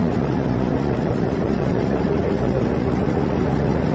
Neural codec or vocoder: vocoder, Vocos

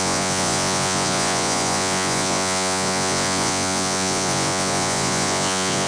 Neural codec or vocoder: vocoder, Vocos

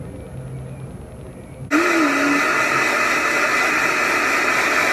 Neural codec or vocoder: none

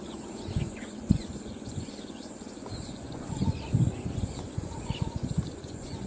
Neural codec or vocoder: vocoder, Vocos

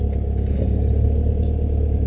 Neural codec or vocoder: none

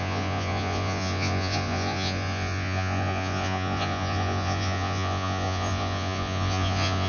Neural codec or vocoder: vocoder, Vocos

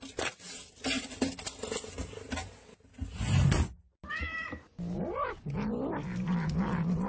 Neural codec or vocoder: none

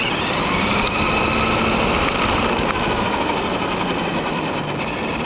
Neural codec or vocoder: none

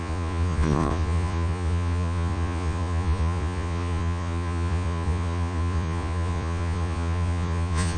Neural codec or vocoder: vocoder, Vocos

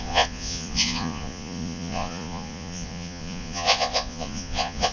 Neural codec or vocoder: vocoder, Vocos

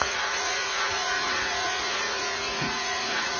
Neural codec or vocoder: vocoder, Vocos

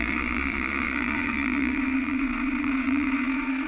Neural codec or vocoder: vocoder, Vocos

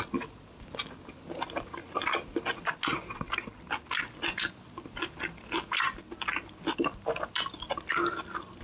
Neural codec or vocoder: none